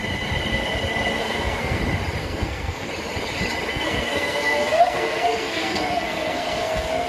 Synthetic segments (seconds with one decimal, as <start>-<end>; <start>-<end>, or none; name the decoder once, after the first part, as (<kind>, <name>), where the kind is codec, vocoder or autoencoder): 1.2-1.8 (codec, SNAC); 2.2-2.9; 3.7-7.1